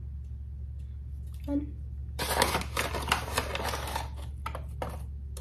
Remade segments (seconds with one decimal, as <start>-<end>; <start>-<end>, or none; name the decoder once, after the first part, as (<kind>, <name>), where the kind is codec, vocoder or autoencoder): none